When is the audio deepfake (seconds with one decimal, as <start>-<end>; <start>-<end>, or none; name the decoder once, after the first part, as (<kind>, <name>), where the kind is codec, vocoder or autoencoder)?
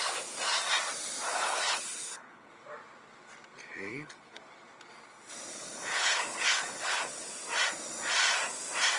1.3-2.5 (codec, HILCodec); 3.9-4.4; 5.5-7.3